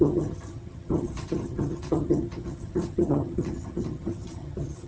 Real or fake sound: fake